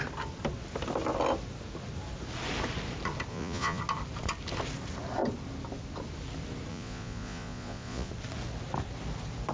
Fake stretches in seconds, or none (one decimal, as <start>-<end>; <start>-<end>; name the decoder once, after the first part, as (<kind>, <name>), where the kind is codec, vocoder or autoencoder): 3.3-3.8 (vocoder, Vocos); 6.7-8.1